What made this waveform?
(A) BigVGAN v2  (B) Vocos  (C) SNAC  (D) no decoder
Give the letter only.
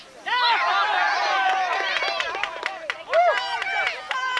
D